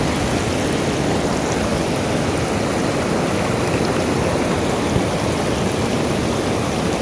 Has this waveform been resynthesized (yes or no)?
no